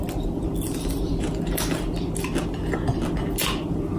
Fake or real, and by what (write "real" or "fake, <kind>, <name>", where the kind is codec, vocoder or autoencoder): real